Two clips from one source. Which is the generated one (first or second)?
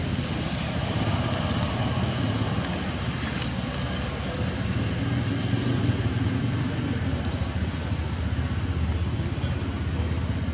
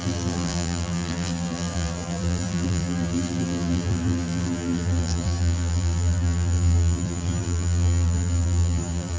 second